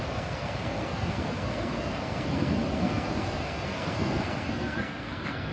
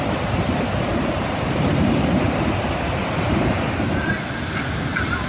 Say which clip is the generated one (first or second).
first